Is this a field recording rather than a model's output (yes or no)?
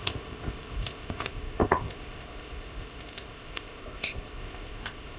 no